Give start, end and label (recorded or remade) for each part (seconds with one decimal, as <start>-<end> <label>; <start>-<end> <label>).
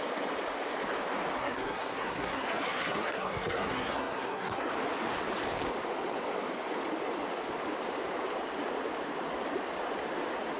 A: 0.0-1.4 recorded; 1.4-4.7 remade; 4.7-10.6 recorded